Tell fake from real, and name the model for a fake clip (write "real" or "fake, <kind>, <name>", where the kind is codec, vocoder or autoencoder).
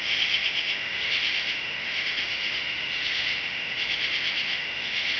fake, autoencoder, DAC-VAE